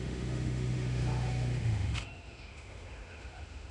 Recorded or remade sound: remade